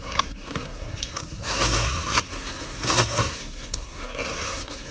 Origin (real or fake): fake